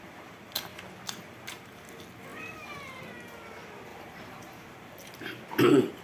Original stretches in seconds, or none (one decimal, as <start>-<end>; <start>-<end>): 0.0-2.3; 3.1-3.9; 4.9-6.0